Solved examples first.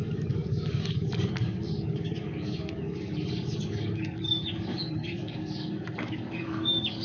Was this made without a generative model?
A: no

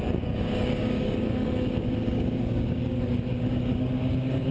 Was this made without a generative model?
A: no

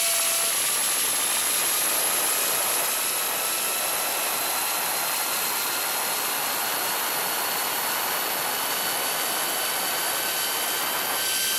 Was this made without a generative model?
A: yes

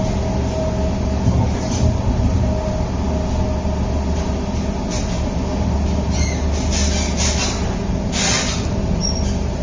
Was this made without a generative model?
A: yes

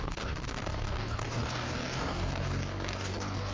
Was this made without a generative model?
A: no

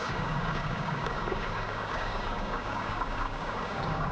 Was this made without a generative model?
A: no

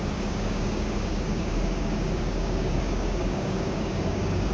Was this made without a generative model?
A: no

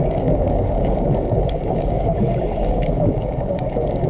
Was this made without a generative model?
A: no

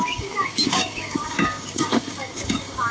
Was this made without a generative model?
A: no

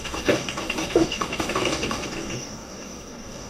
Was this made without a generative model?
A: no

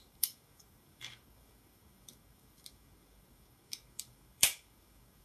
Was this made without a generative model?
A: no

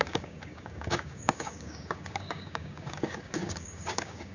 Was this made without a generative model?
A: no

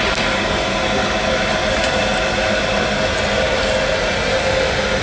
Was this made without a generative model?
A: yes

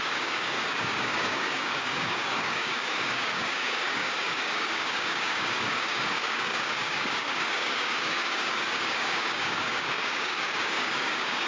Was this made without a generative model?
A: no